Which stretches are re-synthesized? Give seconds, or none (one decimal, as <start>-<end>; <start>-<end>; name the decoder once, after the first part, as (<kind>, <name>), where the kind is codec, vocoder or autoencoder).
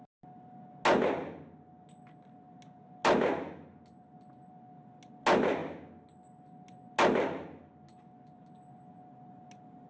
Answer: none